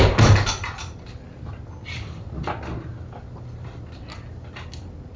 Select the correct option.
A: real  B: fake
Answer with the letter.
A